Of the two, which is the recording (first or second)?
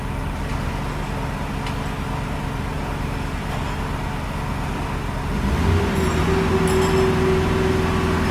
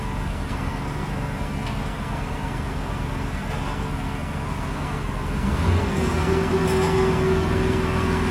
first